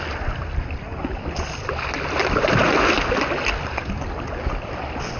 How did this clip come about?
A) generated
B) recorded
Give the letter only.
B